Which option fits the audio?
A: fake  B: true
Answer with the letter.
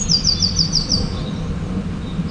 B